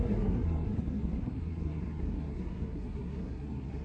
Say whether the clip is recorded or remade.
remade